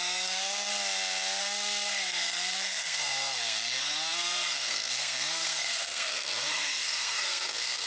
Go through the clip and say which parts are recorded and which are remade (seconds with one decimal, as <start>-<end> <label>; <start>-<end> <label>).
0.0-0.7 remade; 0.7-1.4 recorded; 1.4-7.9 remade